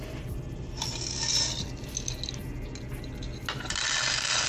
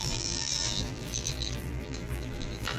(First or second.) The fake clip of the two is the second